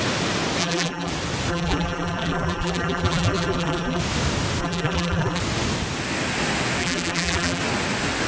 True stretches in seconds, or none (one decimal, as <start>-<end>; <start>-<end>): 0.0-0.6; 1.1-1.5; 4.0-4.6; 5.4-6.8; 7.6-8.3